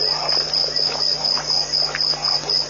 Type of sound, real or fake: real